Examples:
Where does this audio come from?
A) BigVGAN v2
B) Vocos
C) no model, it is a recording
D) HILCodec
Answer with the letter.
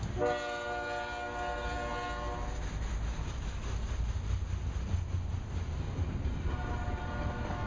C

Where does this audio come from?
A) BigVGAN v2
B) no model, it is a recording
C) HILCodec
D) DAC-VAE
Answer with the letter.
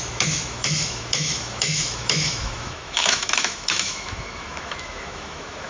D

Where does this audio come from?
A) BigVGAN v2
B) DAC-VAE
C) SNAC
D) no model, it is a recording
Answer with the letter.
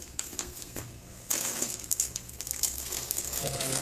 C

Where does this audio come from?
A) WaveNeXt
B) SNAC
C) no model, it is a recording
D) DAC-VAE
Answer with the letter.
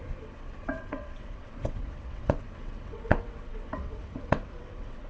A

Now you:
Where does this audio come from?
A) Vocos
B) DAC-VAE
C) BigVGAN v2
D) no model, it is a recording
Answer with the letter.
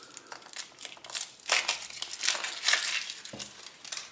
D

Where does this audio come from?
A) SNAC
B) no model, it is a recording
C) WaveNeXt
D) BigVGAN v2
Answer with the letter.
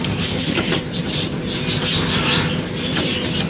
B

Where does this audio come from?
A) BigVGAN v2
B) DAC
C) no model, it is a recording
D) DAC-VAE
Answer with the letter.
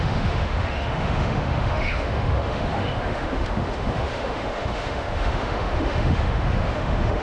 D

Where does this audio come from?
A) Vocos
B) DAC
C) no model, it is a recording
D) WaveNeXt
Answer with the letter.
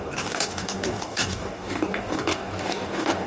B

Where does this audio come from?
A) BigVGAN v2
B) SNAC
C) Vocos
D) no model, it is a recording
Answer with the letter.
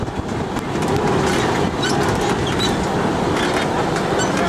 D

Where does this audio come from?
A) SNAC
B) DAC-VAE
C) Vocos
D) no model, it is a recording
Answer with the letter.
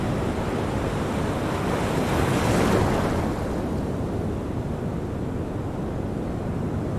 D